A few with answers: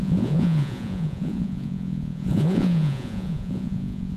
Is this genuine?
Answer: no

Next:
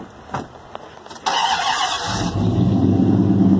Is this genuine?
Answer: yes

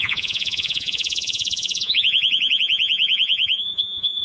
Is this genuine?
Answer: no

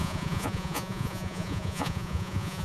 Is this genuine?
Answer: no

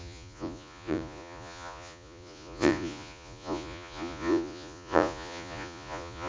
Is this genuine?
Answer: no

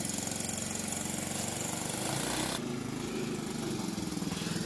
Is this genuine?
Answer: yes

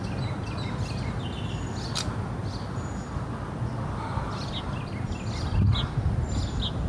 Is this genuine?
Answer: yes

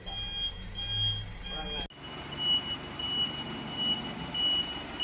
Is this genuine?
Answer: yes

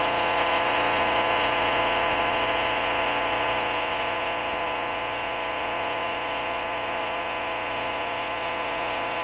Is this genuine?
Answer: no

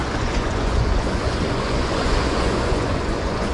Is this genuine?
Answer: no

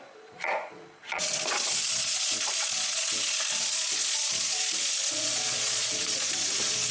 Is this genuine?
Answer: no